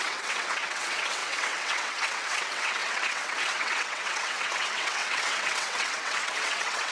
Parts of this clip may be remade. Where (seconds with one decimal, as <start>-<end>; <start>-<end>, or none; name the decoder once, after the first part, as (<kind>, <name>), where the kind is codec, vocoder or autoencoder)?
0.0-6.9 (vocoder, WaveNeXt)